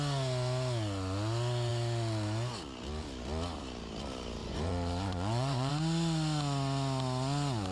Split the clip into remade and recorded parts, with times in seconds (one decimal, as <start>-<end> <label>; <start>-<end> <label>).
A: 0.0-4.4 recorded; 4.4-5.7 remade; 5.7-7.7 recorded

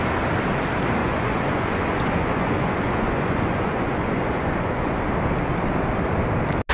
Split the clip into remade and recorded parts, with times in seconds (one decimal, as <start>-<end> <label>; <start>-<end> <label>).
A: 0.0-1.0 recorded; 1.0-5.0 remade; 5.0-6.7 recorded